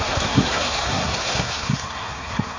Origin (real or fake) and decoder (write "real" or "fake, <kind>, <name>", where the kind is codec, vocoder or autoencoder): fake, codec, SNAC